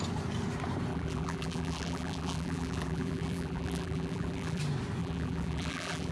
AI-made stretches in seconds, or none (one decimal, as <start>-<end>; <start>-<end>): 0.9-4.6; 5.0-6.1